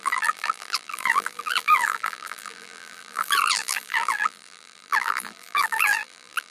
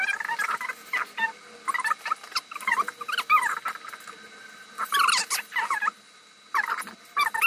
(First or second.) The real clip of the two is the second